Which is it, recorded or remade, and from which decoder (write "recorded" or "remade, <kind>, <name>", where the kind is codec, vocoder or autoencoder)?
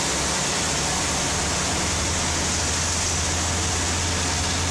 recorded